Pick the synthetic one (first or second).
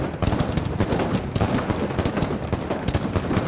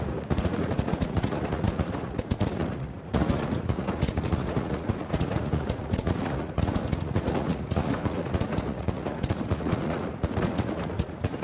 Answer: second